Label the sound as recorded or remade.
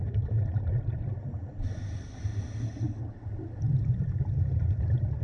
recorded